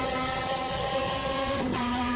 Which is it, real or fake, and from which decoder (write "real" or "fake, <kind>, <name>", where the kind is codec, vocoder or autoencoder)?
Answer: fake, vocoder, HiFi-GAN